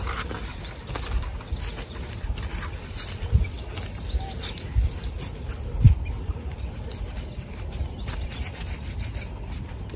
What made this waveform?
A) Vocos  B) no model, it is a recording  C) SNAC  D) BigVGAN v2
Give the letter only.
B